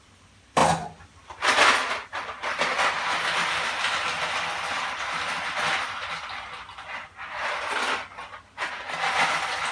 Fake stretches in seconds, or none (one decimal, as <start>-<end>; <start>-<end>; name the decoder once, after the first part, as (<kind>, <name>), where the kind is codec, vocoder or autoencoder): none